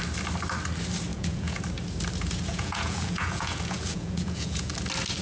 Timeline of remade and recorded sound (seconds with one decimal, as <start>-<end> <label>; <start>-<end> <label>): 0.0-1.1 recorded; 1.1-1.6 remade; 1.6-2.5 recorded; 2.5-4.7 remade; 4.7-5.2 recorded